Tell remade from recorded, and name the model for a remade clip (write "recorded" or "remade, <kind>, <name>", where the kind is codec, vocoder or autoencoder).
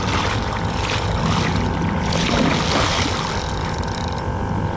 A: recorded